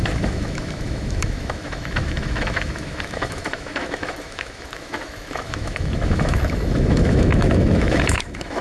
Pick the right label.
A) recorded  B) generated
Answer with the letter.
B